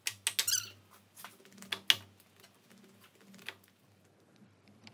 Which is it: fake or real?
real